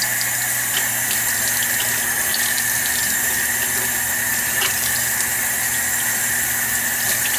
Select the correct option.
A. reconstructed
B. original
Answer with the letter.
B